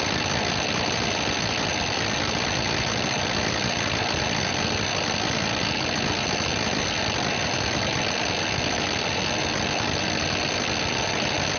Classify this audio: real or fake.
real